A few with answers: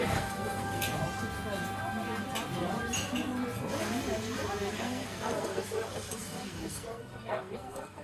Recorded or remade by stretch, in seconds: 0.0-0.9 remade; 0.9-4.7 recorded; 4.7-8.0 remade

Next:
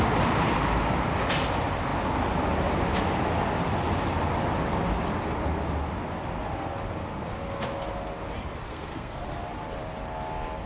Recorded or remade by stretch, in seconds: 0.0-8.7 recorded; 8.7-9.2 remade; 9.2-10.7 recorded

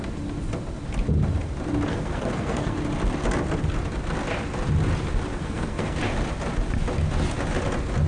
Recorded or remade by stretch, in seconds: 0.0-1.9 recorded; 1.9-2.8 remade; 2.8-5.3 recorded; 5.3-6.0 remade; 6.0-8.1 recorded

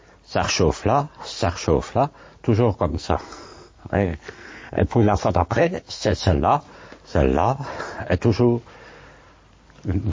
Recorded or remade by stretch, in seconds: 0.0-2.9 recorded; 2.9-6.4 remade; 6.4-10.1 recorded

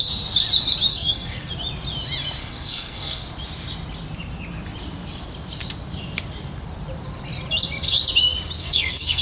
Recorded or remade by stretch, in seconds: 0.0-0.9 recorded; 0.9-1.5 remade; 1.5-2.4 recorded; 2.4-3.2 remade; 3.2-8.6 recorded; 8.6-9.2 remade

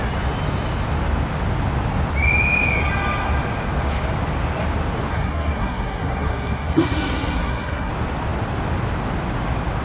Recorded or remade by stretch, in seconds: 0.0-5.1 recorded; 5.1-7.9 remade; 7.9-9.8 recorded